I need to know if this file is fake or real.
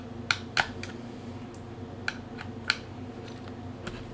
real